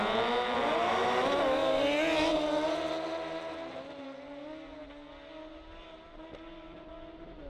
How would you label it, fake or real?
real